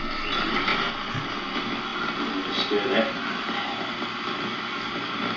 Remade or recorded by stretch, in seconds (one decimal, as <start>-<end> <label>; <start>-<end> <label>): 0.0-5.4 recorded